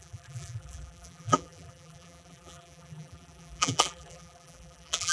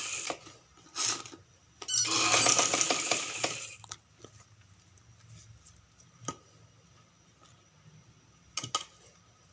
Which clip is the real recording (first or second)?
second